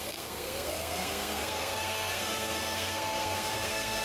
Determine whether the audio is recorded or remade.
remade